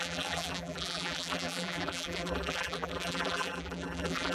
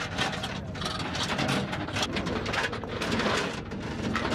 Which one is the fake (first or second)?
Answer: first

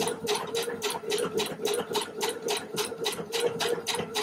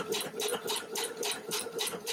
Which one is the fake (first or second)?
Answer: second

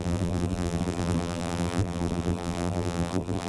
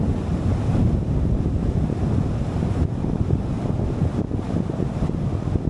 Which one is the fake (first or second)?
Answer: first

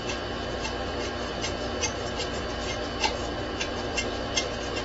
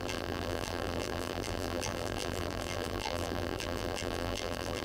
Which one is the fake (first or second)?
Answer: second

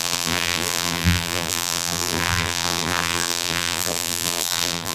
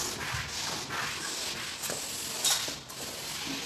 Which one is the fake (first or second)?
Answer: first